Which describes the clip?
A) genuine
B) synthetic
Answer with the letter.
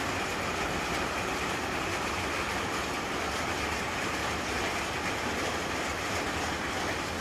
A